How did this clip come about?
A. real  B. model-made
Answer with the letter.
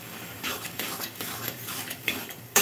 B